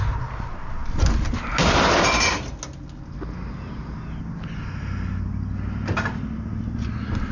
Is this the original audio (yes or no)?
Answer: yes